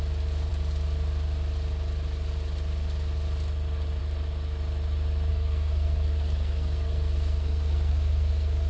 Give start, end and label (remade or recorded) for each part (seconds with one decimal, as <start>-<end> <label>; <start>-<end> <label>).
0.0-5.3 recorded; 5.3-8.7 remade